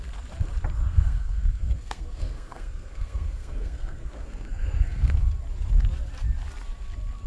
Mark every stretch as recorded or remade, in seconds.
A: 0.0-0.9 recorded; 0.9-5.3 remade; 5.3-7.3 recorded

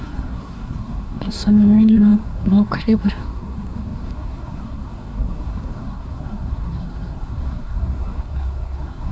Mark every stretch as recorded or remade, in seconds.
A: 0.0-9.1 remade

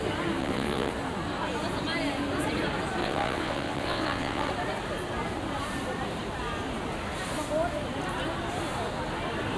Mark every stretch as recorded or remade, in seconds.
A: 0.0-0.4 recorded; 0.4-0.9 remade; 0.9-3.0 recorded; 3.0-4.5 remade; 4.5-9.6 recorded

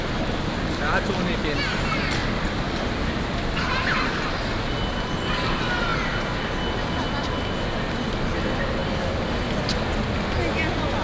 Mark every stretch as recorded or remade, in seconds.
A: 0.0-2.2 recorded; 2.2-3.6 remade; 3.6-8.8 recorded; 8.8-9.4 remade; 9.4-11.0 recorded